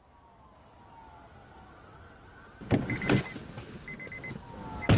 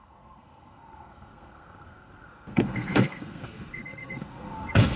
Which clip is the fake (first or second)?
second